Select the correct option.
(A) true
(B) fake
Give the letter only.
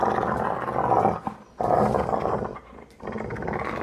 A